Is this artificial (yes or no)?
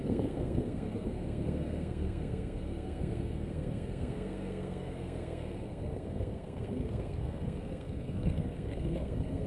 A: yes